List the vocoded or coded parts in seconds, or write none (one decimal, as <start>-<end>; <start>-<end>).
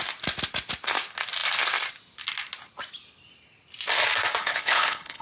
4.4-5.2